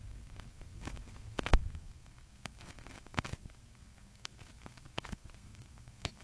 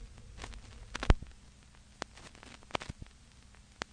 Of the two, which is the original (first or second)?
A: second